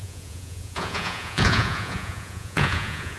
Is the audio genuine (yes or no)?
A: no